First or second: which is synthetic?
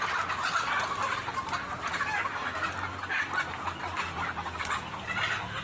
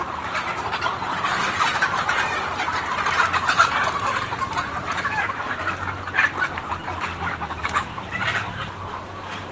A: second